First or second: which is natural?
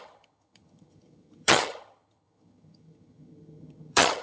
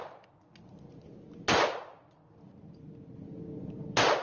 second